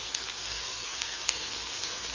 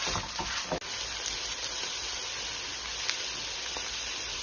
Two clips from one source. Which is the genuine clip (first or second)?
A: second